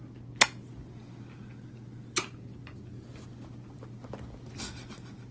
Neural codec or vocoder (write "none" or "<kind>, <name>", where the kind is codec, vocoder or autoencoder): none